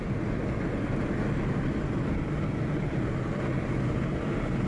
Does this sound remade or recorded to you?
recorded